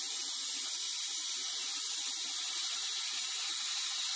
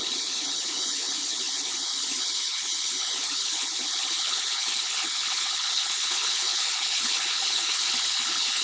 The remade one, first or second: second